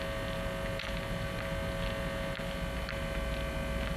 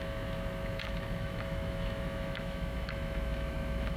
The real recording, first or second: first